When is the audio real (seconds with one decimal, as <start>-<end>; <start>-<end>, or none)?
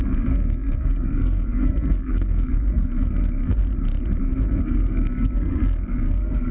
3.6-4.2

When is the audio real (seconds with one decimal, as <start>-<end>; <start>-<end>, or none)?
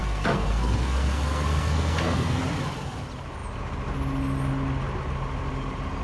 2.4-6.0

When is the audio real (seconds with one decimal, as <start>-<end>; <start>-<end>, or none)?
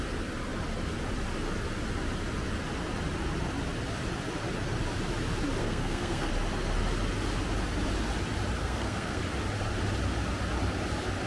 0.0-5.6; 6.3-8.6; 9.2-11.3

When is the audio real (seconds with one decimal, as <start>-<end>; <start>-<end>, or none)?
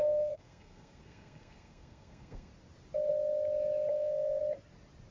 2.5-3.9; 4.4-5.1